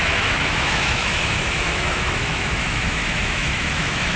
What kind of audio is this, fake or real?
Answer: fake